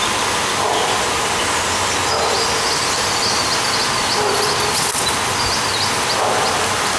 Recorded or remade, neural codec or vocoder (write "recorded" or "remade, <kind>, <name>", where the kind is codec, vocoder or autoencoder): recorded